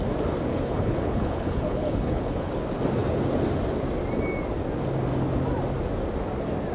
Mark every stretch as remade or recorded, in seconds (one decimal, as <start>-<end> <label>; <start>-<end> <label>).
0.0-0.5 recorded; 0.5-2.5 remade; 2.5-6.7 recorded